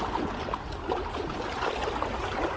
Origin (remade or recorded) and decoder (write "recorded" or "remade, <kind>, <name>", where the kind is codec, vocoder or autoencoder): recorded